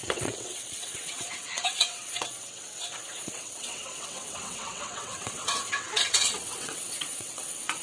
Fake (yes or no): yes